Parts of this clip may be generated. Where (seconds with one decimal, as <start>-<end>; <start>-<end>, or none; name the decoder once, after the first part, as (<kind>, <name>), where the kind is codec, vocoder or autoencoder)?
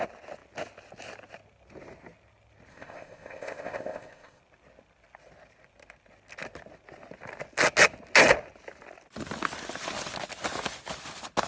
2.7-4.4 (codec, ZipCodec)